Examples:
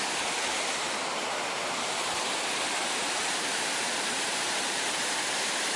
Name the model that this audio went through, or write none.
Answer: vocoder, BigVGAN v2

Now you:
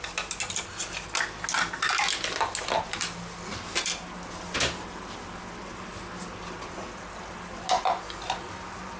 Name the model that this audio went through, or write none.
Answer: none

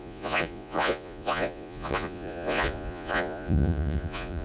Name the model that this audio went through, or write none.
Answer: vocoder, Vocos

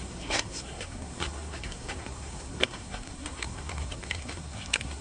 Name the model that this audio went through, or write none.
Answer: codec, SNAC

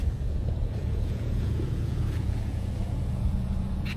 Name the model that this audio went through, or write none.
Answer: vocoder, Vocos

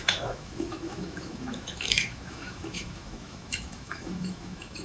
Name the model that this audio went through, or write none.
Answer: autoencoder, DAC-VAE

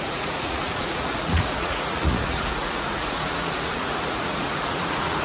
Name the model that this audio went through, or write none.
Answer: vocoder, Vocos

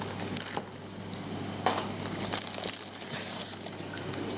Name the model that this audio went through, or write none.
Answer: none